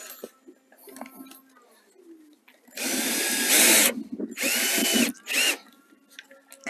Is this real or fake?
real